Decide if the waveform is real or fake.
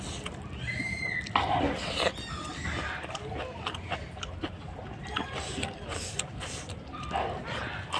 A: real